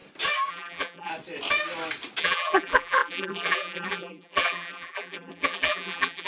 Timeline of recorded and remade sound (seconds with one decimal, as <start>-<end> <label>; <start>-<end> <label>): 0.0-0.5 recorded; 0.5-1.1 remade; 1.1-2.2 recorded; 2.2-6.3 remade